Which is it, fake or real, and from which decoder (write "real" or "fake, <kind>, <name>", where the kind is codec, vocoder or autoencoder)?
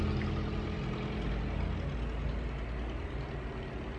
real